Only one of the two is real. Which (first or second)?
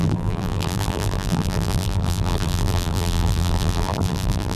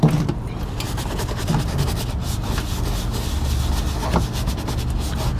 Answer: second